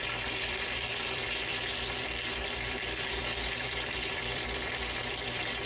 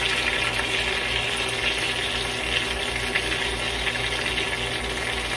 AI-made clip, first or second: first